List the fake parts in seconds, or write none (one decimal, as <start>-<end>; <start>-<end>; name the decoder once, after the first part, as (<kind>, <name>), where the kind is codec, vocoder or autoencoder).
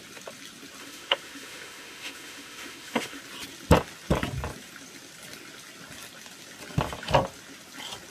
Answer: 0.8-3.2 (autoencoder, DAC-VAE)